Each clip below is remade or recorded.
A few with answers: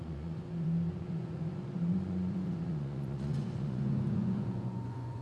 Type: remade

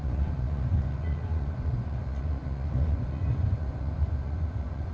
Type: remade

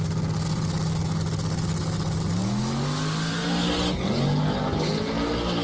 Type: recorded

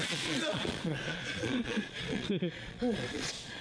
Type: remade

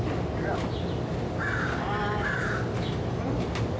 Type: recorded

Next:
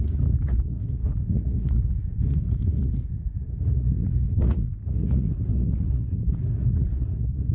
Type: remade